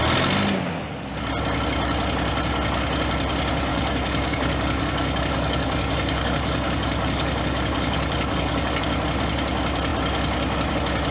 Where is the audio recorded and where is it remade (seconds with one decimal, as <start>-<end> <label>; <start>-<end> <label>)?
0.0-3.7 recorded; 3.7-8.8 remade; 8.8-11.1 recorded